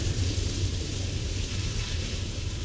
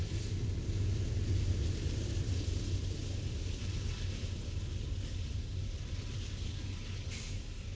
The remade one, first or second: first